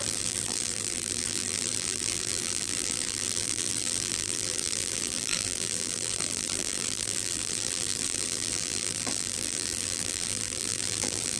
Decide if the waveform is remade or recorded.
remade